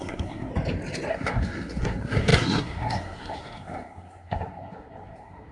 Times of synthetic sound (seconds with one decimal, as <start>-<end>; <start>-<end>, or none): 0.0-0.5; 1.1-5.5